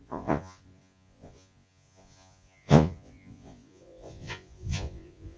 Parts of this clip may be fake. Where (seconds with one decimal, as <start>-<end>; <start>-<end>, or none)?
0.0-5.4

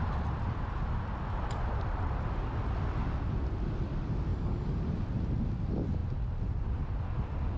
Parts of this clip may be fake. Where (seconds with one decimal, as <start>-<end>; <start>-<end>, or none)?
4.3-4.8

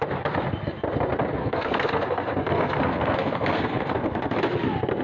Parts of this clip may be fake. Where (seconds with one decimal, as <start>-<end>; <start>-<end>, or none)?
1.4-4.4

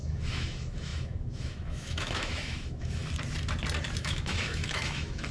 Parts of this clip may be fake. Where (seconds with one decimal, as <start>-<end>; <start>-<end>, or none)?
0.0-3.0; 4.0-5.3

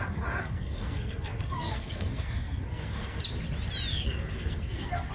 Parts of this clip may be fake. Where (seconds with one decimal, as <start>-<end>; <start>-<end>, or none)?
0.4-3.2; 3.9-5.1

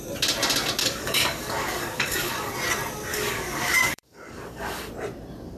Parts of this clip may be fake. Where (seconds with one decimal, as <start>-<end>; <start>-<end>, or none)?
0.8-2.5; 3.1-4.9

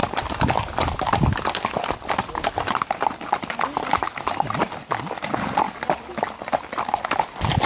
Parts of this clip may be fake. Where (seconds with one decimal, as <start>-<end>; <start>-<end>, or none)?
none